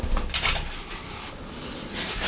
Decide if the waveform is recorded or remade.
recorded